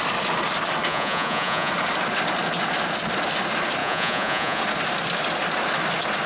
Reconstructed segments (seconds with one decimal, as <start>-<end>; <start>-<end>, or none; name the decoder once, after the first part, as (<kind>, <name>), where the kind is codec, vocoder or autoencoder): 0.9-1.7 (vocoder, Vocos); 3.8-4.6